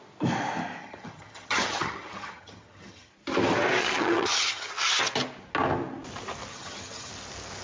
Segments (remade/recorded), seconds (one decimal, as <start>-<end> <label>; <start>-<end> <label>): 0.0-0.8 recorded; 0.8-3.1 remade; 3.1-3.8 recorded; 3.8-4.7 remade; 4.7-6.5 recorded; 6.5-7.1 remade; 7.1-7.6 recorded